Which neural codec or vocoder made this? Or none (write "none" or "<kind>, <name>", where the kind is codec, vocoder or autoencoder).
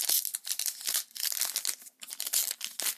none